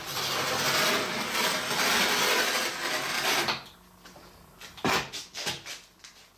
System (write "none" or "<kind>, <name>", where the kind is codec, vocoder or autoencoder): none